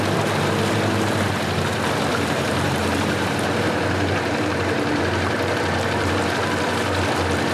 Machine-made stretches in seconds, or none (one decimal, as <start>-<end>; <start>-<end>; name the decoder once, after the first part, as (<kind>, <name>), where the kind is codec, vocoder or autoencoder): 2.1-6.2 (vocoder, BigVGAN v2)